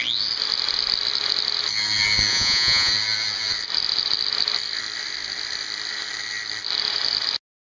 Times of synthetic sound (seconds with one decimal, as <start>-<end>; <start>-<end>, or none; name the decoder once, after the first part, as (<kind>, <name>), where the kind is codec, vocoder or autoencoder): 2.3-2.9 (vocoder, Vocos)